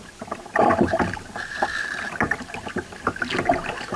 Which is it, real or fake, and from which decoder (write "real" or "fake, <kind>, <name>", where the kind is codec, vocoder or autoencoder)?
real